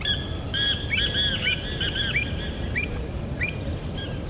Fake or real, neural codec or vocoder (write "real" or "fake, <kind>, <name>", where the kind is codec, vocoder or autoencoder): real